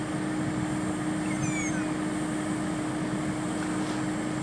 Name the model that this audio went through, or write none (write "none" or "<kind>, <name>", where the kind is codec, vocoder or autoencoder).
none